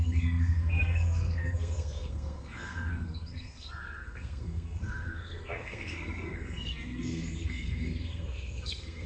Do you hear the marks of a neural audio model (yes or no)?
yes